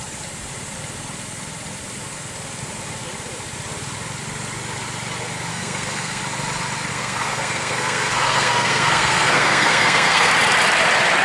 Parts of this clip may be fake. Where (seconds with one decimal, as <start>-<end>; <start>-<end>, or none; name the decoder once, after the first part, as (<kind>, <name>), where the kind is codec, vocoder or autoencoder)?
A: 5.5-6.2 (codec, SNAC); 6.9-10.3